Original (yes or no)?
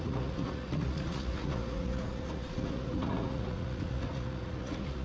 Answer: no